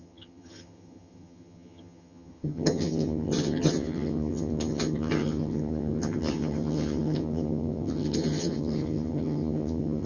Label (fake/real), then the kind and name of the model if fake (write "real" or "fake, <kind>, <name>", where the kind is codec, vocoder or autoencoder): fake, vocoder, HiFi-GAN